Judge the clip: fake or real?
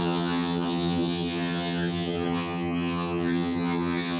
fake